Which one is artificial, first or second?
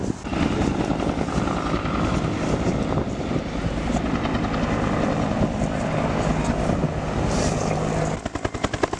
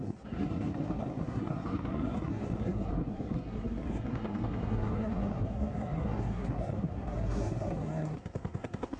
second